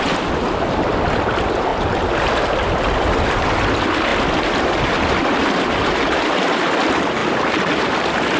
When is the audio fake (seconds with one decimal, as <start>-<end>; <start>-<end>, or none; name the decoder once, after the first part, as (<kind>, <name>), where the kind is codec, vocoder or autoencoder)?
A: none